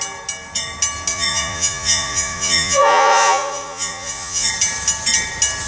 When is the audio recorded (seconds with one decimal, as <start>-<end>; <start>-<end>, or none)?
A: 0.0-1.1; 4.5-5.7